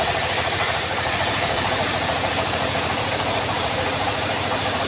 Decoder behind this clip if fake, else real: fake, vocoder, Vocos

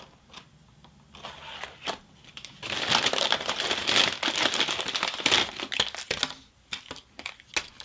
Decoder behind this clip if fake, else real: real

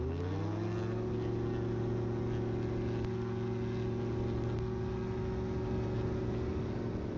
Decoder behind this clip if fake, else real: real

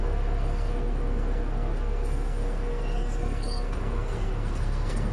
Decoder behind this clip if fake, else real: fake, codec, SNAC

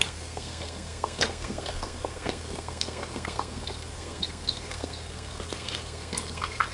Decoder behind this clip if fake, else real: fake, codec, SNAC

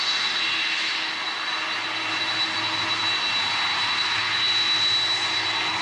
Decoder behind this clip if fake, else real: real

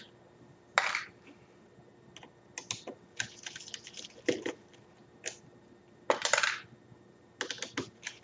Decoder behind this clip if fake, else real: real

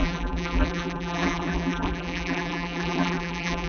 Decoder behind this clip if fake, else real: fake, vocoder, BigVGAN v2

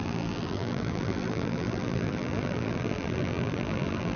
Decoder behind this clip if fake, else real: fake, vocoder, BigVGAN v2